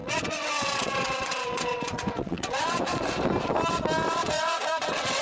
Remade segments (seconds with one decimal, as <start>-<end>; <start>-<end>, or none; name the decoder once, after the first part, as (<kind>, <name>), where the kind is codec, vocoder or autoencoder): 0.0-3.1 (vocoder, WaveNeXt); 4.2-5.2